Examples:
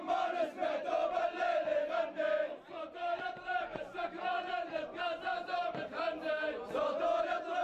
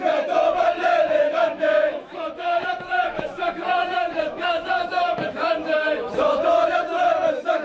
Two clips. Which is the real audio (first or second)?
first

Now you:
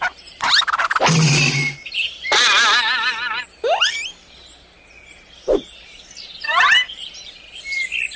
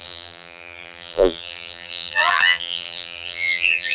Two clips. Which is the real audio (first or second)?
first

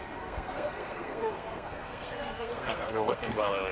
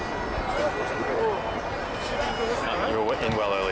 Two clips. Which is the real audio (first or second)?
second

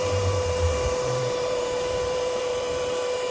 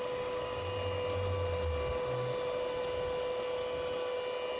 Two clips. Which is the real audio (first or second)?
second